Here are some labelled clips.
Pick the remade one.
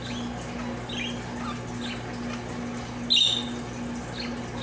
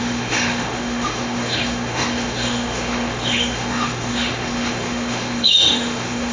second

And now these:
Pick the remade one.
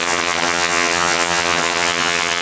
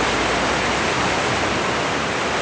first